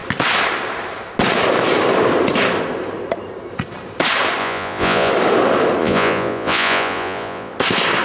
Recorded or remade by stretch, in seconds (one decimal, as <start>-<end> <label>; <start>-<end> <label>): 0.0-4.4 recorded; 4.4-5.1 remade; 5.1-5.8 recorded; 5.8-7.5 remade; 7.5-8.0 recorded